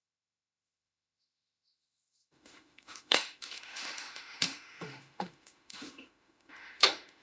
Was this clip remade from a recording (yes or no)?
yes